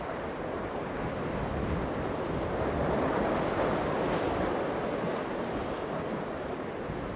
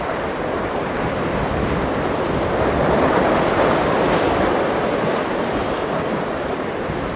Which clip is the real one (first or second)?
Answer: first